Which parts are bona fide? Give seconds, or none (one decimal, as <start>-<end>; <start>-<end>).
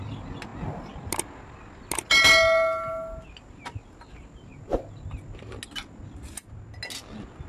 0.0-7.5